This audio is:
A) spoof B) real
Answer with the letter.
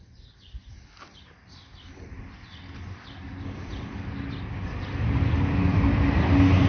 B